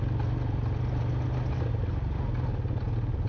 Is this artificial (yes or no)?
no